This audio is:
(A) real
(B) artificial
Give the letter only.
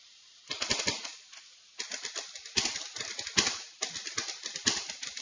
A